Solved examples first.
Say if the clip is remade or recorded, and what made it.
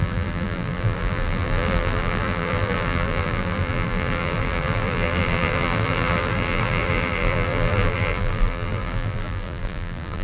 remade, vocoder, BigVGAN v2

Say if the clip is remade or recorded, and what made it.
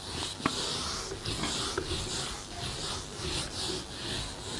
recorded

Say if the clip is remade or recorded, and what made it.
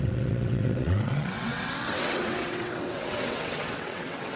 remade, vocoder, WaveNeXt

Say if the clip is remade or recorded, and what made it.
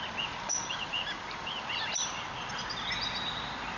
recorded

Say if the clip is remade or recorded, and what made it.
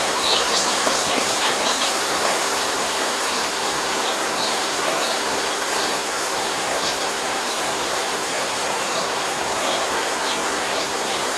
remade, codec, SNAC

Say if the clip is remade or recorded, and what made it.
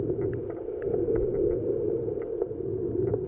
recorded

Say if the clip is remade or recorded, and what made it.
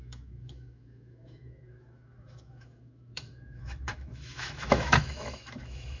remade, autoencoder, DAC-VAE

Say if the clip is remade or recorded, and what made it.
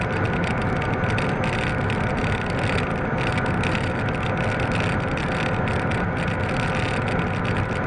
recorded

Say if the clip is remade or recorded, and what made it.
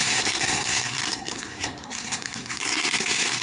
remade, codec, SNAC